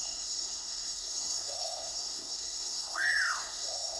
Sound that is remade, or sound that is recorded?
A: remade